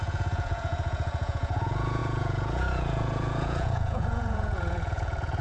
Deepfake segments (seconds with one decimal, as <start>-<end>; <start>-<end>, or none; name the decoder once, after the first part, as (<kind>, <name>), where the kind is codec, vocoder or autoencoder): 0.0-5.4 (vocoder, Vocos)